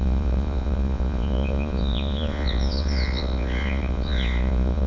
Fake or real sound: fake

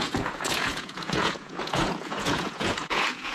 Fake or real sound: fake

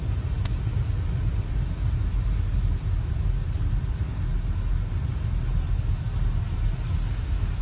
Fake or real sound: real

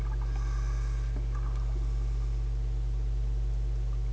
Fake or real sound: real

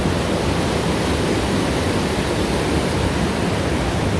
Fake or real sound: real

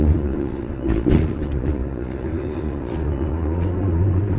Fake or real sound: fake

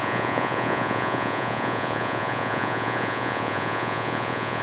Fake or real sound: fake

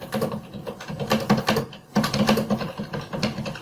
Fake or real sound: real